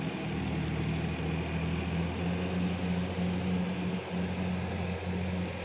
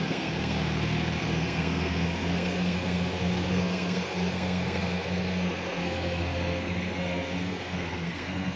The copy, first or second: second